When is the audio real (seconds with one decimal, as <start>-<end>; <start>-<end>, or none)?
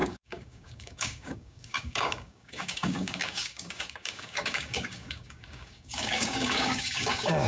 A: none